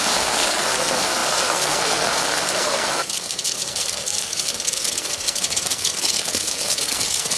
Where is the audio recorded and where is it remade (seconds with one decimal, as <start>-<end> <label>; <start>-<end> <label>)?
0.0-7.4 remade